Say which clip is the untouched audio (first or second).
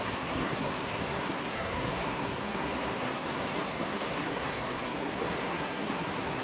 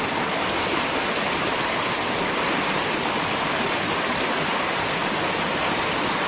second